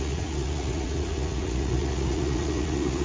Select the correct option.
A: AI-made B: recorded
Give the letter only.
A